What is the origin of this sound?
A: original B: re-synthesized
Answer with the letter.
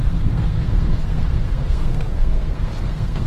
B